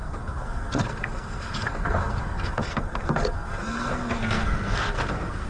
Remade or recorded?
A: remade